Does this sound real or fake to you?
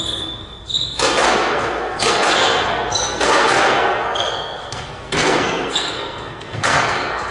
fake